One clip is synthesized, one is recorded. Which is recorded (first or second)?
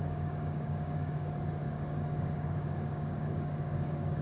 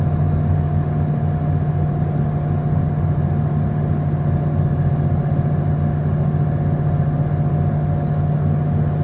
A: second